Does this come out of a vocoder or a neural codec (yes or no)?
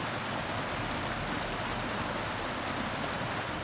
no